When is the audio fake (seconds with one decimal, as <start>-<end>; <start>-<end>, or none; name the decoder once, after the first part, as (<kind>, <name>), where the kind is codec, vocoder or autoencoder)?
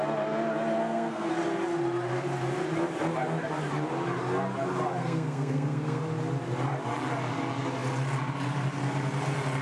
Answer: 0.8-1.3 (codec, SNAC); 5.0-6.0